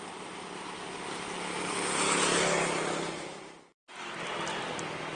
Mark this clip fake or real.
real